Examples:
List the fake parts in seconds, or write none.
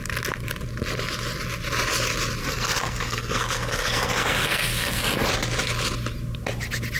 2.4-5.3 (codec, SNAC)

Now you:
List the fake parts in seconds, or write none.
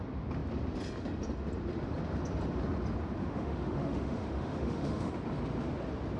3.2-5.1 (autoencoder, DAC-VAE)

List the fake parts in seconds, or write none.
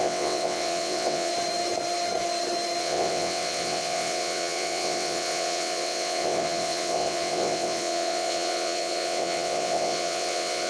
0.0-1.3 (vocoder, WaveNeXt); 2.8-10.7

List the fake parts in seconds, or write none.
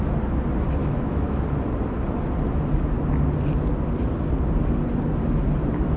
0.8-1.4 (autoencoder, DAC-VAE)